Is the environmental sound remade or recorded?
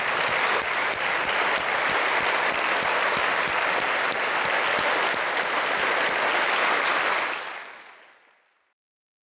recorded